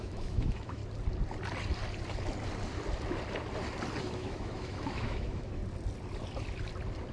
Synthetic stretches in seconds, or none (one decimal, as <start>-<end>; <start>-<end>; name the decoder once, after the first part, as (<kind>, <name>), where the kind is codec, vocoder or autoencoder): 0.0-0.8 (autoencoder, DAC-VAE); 4.0-5.6